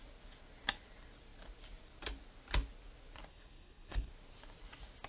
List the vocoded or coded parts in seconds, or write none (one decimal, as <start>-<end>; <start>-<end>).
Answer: 3.3-4.1